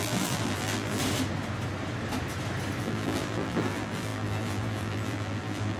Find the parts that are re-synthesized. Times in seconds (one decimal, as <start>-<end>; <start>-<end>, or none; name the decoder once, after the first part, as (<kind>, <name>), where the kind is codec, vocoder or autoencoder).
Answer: 0.0-1.0 (vocoder, BigVGAN v2); 2.8-5.8